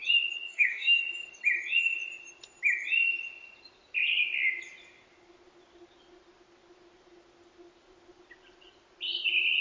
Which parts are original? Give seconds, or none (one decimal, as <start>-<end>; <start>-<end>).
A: 0.0-0.5; 1.0-9.6